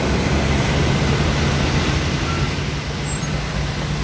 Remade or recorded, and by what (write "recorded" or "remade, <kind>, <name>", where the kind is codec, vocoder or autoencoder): recorded